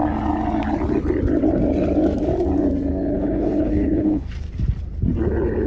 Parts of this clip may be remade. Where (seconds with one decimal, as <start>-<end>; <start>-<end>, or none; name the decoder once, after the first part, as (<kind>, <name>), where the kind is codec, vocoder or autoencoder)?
3.1-4.3 (codec, HILCodec)